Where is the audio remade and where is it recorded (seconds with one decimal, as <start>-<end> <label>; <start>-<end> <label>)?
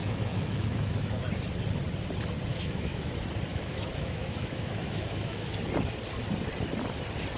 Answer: 0.0-1.2 remade; 1.2-2.5 recorded; 2.5-3.1 remade; 3.1-3.5 recorded; 3.5-5.5 remade; 5.5-7.4 recorded